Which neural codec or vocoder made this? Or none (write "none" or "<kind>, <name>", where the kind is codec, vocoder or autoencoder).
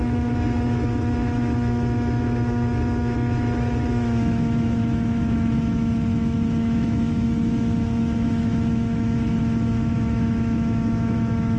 autoencoder, DAC-VAE